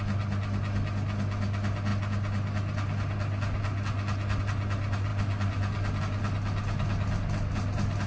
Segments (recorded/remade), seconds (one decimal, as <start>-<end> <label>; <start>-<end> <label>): 0.0-8.1 recorded